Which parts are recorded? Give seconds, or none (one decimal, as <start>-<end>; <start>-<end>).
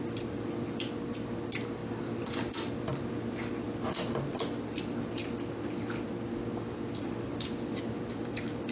0.0-8.7